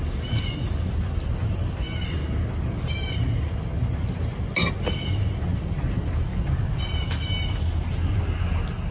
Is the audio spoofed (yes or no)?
no